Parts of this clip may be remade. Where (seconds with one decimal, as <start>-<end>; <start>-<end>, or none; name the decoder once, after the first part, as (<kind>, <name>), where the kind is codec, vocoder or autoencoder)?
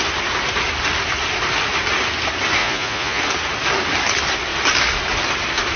2.6-3.2 (vocoder, Vocos)